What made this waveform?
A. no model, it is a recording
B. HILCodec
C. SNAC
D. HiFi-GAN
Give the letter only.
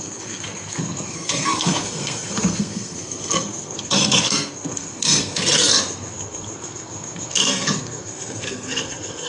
C